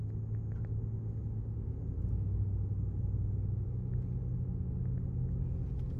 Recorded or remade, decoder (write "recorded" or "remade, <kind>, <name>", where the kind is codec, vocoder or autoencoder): recorded